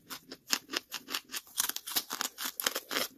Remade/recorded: recorded